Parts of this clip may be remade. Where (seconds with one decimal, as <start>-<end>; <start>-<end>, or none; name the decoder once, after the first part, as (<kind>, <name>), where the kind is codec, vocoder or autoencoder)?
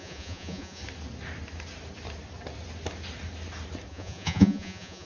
0.0-0.8 (vocoder, Vocos); 3.9-5.1